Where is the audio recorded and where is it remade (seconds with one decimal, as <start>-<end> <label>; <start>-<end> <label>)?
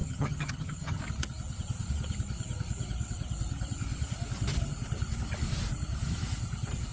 0.0-1.0 remade; 1.0-6.9 recorded